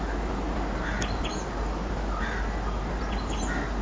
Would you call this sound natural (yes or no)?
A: yes